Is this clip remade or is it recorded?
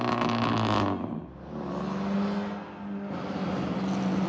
recorded